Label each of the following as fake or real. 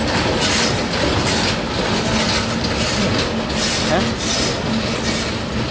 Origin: real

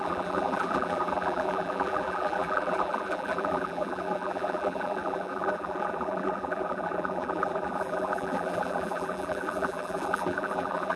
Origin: fake